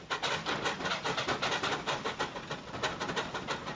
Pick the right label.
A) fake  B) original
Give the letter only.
B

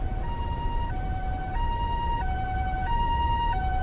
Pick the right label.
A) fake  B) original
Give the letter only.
B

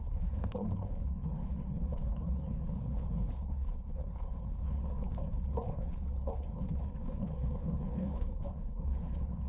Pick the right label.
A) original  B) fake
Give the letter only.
B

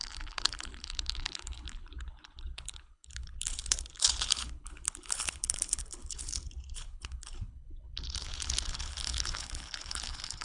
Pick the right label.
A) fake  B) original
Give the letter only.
A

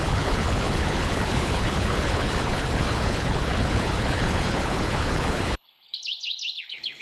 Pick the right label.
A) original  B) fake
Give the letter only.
B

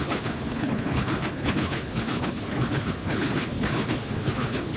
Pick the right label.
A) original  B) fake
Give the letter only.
B